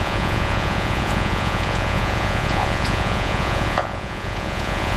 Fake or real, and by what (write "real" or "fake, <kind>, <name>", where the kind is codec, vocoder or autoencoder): fake, vocoder, Vocos